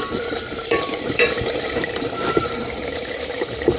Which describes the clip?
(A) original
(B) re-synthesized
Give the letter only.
B